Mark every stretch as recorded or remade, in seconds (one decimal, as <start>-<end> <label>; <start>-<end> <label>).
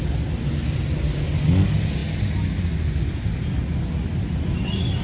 0.0-5.0 recorded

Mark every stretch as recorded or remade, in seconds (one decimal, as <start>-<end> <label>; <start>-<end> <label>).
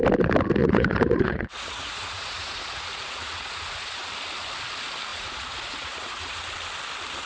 0.0-0.6 recorded; 0.6-4.1 remade; 4.1-5.1 recorded; 5.1-6.5 remade; 6.5-7.3 recorded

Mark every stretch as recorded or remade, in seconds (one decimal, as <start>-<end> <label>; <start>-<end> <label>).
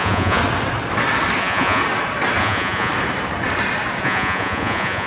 0.0-0.4 remade; 0.4-1.4 recorded; 1.4-1.8 remade; 1.8-2.4 recorded; 2.4-2.9 remade; 2.9-4.0 recorded; 4.0-5.1 remade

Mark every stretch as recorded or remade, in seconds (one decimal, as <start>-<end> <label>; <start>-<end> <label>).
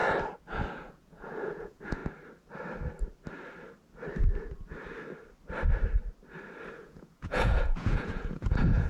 0.0-0.7 recorded; 0.7-2.0 remade; 2.0-6.7 recorded; 6.7-8.9 remade